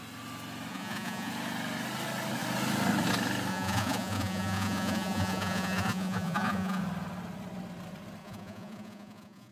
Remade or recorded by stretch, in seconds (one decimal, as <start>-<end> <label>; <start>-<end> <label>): 0.0-0.7 recorded; 0.7-1.3 remade; 1.3-3.5 recorded; 3.5-6.8 remade; 6.8-8.2 recorded; 8.2-9.5 remade